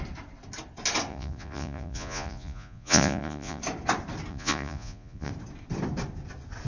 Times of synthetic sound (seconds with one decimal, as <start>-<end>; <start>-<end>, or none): 1.1-3.6; 4.3-5.3